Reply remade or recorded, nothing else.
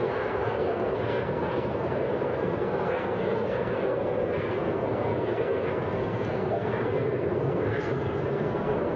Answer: remade